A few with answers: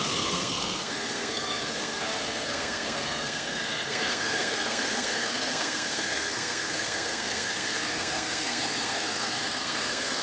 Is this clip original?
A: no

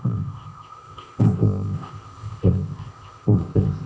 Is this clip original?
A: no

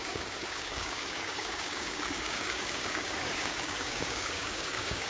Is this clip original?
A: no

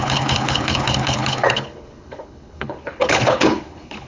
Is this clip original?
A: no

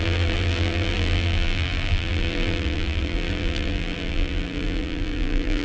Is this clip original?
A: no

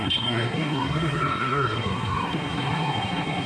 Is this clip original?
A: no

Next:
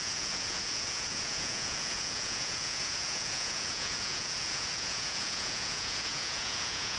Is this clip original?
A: no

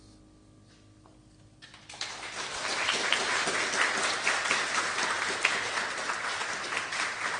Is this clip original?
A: yes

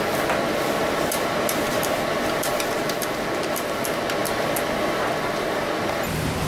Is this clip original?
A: yes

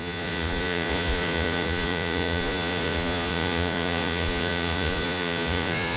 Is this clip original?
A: no